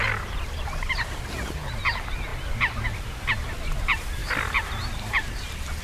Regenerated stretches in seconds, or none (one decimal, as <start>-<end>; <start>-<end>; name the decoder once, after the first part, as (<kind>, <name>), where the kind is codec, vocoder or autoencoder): none